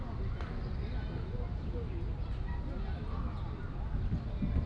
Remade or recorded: recorded